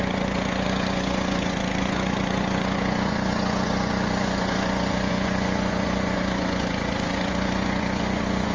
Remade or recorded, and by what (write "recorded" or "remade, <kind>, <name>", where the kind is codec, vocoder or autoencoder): remade, vocoder, Vocos